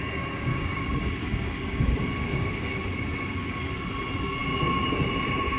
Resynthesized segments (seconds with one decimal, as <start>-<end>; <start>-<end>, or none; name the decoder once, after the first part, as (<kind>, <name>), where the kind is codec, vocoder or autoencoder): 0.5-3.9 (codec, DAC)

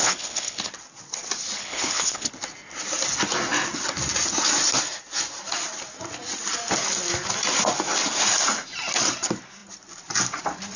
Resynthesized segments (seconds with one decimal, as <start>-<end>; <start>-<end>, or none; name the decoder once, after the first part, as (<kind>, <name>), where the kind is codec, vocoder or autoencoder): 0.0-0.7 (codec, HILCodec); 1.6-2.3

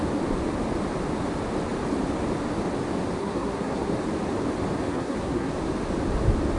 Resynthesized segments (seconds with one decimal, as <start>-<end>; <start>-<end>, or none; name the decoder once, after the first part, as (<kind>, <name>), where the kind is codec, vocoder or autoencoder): 3.2-3.9 (codec, SNAC); 4.9-5.5

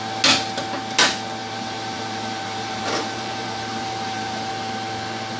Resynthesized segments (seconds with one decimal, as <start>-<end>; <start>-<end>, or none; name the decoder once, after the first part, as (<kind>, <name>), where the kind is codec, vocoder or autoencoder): 1.4-4.5 (vocoder, BigVGAN v2)

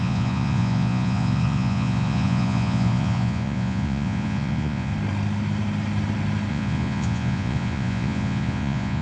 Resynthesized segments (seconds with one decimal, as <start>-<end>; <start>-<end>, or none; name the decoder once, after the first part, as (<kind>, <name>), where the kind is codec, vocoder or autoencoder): 0.0-4.9 (vocoder, Vocos); 6.5-9.0